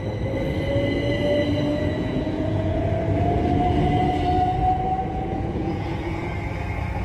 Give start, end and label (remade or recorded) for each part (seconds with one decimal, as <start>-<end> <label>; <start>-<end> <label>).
0.0-1.7 recorded; 1.7-2.8 remade; 2.8-5.0 recorded; 5.0-6.3 remade; 6.3-7.0 recorded